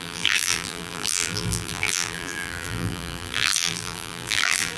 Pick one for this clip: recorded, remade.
remade